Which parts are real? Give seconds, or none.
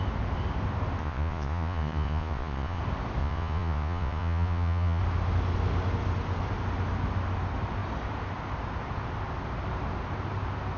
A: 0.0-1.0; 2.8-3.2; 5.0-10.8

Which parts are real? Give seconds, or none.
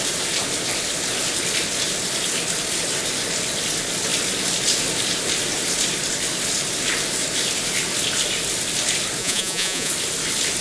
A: 0.0-9.2; 9.9-10.6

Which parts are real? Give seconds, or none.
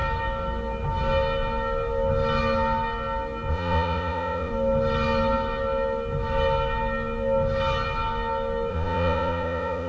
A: 0.0-3.5; 4.5-8.7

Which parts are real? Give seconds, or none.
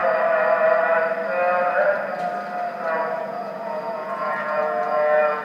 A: 0.0-3.2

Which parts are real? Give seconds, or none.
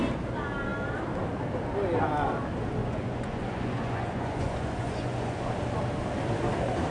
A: 0.0-2.8; 5.5-6.9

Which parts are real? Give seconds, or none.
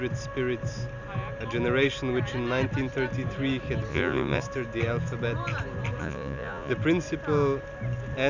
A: 0.0-3.9; 4.4-6.0; 6.7-8.3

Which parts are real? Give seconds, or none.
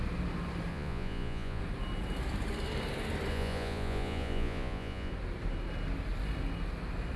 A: 0.0-0.7; 1.6-3.3; 5.1-7.2